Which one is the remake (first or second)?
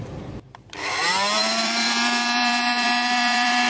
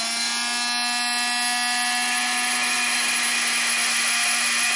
first